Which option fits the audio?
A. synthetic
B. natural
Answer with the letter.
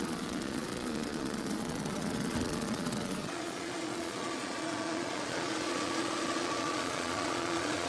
A